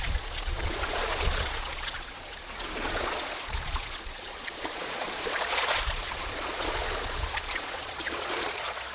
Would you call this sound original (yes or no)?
no